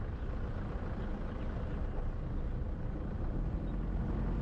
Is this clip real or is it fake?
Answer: real